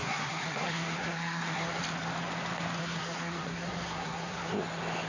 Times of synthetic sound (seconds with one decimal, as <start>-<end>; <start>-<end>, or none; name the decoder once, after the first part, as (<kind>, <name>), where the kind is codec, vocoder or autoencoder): 0.0-1.8 (codec, SNAC); 2.8-4.5